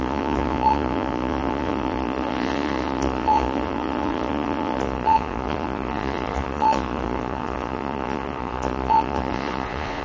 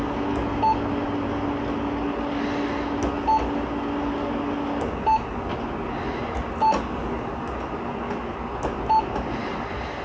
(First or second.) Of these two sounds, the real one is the second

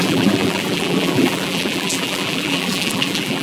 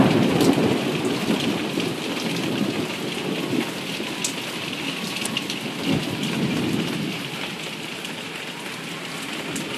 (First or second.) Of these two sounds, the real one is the second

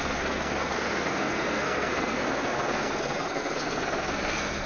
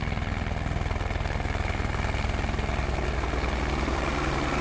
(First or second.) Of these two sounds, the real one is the second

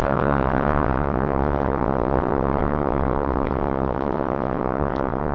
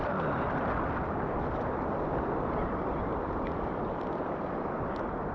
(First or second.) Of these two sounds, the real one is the second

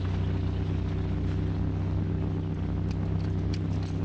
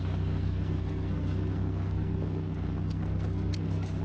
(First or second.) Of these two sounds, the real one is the first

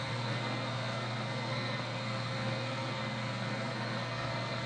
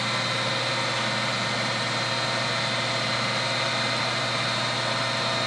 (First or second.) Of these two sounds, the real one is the second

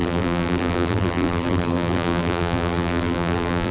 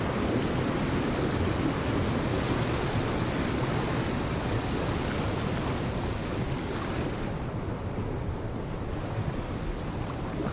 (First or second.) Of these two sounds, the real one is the second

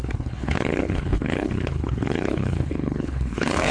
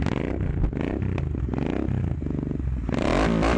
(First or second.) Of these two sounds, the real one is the second